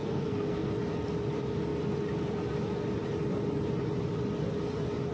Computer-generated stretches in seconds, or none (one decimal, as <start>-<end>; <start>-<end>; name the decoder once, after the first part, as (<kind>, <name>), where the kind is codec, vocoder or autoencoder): 0.0-0.7 (codec, SNAC)